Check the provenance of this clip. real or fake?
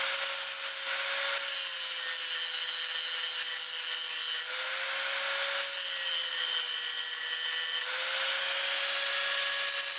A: real